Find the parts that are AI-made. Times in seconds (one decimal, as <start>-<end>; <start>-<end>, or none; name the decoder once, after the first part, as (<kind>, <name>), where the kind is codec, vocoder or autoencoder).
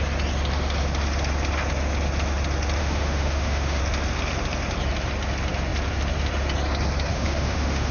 2.8-3.8 (autoencoder, DAC-VAE); 7.1-7.9